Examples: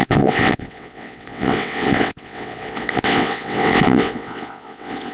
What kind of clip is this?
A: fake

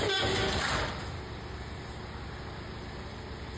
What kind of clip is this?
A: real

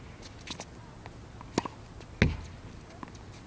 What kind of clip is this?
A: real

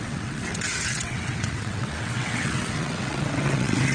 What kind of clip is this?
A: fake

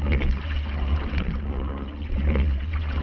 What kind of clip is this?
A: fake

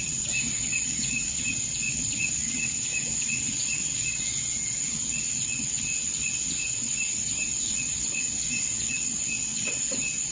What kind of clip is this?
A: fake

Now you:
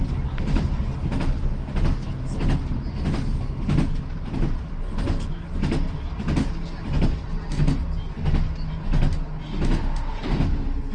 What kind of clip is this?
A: real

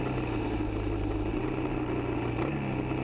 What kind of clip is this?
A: real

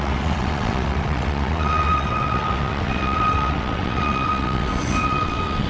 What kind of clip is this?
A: fake